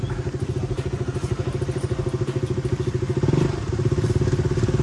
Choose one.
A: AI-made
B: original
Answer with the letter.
B